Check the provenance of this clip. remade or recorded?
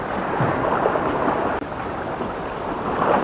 recorded